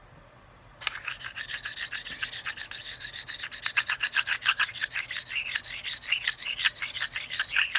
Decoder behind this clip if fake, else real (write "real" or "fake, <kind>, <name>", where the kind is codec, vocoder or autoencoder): real